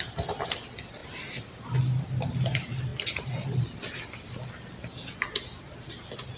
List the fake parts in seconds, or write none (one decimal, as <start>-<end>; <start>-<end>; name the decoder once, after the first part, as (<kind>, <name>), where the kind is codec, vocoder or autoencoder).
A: none